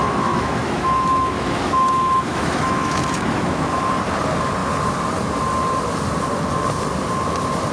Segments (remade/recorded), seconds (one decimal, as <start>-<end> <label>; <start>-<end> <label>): 0.0-3.8 remade; 3.8-7.7 recorded